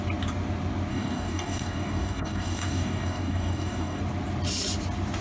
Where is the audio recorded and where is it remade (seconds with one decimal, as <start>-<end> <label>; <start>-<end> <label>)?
0.0-0.9 recorded; 0.9-4.0 remade; 4.0-5.2 recorded